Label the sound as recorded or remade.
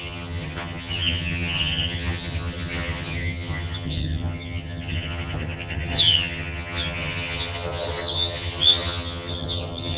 remade